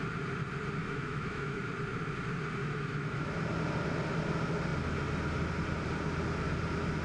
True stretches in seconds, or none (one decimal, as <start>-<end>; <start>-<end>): 0.0-0.8; 1.7-2.6; 3.3-7.0